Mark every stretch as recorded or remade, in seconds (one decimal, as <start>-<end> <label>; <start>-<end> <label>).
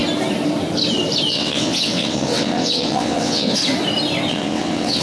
0.0-1.3 recorded; 1.3-3.6 remade; 3.6-4.3 recorded; 4.3-5.0 remade